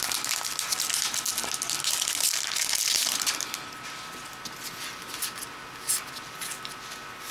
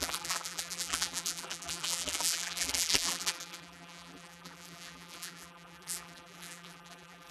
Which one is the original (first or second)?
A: first